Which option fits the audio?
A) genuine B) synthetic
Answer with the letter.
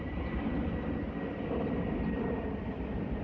A